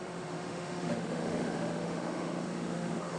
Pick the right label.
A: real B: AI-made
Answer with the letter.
B